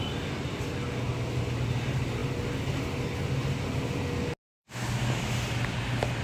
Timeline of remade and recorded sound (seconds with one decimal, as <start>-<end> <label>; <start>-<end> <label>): 0.0-6.2 recorded